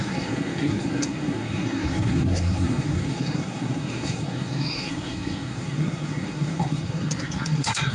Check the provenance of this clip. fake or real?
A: fake